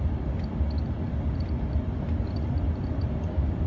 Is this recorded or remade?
recorded